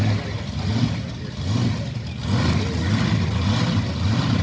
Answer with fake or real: real